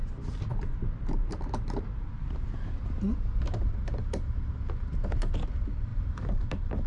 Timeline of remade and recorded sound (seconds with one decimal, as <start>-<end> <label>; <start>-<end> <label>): 0.0-1.2 recorded; 1.2-4.5 remade; 4.5-5.9 recorded; 5.9-6.9 remade